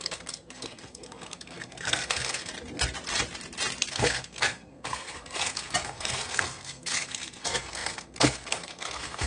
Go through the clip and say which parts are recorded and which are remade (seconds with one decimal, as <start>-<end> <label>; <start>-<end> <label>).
0.0-2.5 remade; 2.5-3.9 recorded; 3.9-9.3 remade